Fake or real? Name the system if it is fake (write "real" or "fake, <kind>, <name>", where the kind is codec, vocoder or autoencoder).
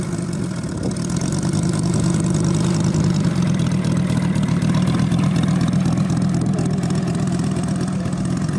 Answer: real